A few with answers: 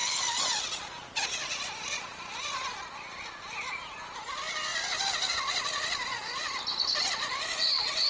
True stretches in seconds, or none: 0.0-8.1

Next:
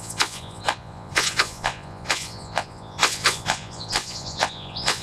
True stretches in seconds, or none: none

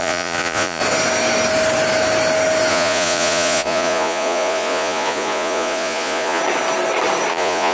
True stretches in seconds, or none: 0.8-2.7; 6.4-7.3

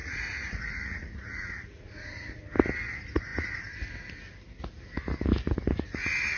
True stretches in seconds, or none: 2.4-6.4